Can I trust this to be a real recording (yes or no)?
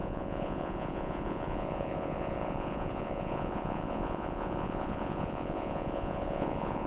no